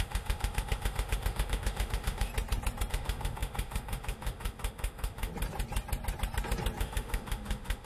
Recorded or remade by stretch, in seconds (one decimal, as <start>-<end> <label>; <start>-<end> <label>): 0.0-2.3 remade; 2.3-2.9 recorded; 2.9-5.3 remade; 5.3-6.8 recorded; 6.8-7.9 remade